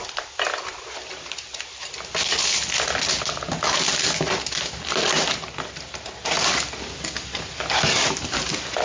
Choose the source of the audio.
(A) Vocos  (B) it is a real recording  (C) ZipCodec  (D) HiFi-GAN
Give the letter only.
B